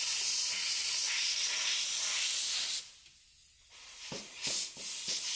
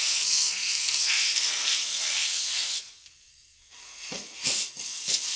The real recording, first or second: first